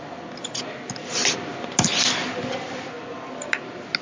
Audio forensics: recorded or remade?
recorded